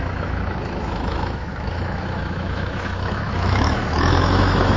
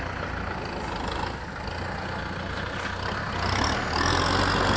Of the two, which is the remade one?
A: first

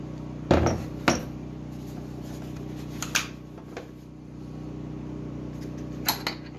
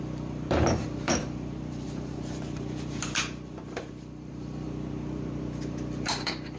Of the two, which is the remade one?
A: second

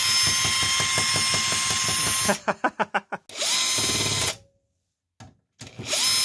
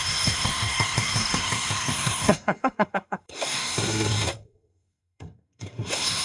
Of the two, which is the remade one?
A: second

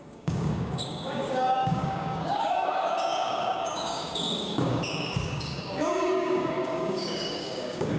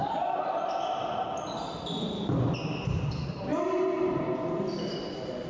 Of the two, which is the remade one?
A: first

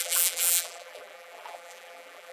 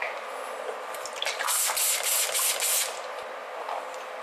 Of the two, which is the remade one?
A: first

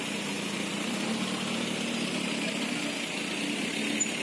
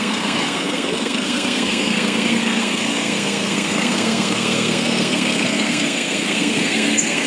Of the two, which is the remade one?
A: second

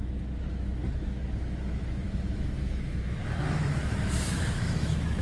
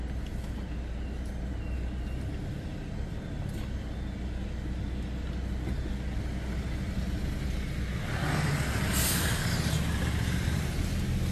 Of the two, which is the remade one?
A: first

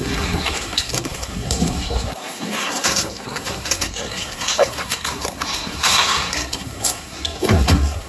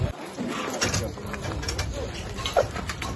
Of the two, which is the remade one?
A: first